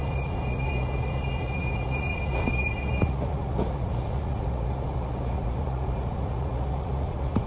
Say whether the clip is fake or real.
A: fake